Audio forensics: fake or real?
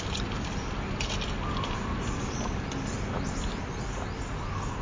real